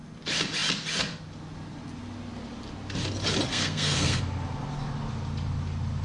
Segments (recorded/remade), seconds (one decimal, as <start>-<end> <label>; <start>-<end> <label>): 0.0-3.5 recorded; 3.5-4.2 remade; 4.2-6.0 recorded